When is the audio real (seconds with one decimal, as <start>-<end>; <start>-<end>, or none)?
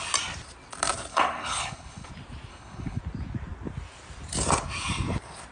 0.0-1.1; 2.1-2.5; 3.0-5.5